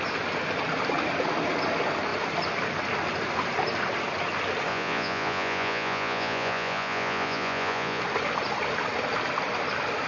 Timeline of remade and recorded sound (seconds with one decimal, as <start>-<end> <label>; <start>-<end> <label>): 0.0-4.7 recorded; 4.7-8.0 remade; 8.0-10.1 recorded